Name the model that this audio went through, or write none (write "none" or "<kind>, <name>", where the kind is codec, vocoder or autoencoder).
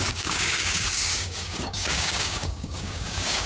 codec, DAC